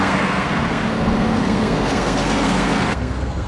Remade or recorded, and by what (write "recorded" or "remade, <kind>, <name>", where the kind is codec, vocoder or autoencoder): remade, codec, SNAC